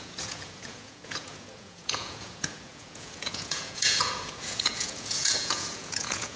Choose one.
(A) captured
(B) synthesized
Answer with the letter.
B